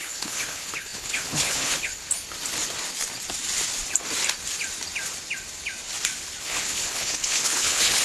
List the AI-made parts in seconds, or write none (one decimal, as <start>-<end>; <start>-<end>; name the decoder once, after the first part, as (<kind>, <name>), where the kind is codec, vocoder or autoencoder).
0.0-2.0 (codec, HILCodec); 6.4-8.0